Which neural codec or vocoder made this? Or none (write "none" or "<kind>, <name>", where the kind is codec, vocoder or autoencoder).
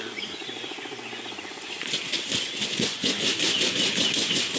vocoder, Vocos